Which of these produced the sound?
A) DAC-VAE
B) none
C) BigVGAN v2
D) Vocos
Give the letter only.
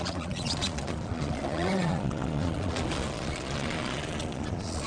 D